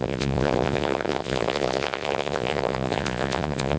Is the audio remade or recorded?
remade